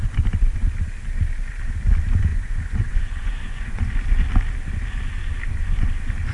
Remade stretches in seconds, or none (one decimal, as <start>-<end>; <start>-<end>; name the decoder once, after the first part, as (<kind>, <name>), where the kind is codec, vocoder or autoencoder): 2.3-3.8 (vocoder, Vocos)